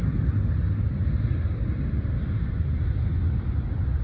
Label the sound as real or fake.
real